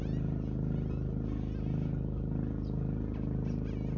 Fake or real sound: real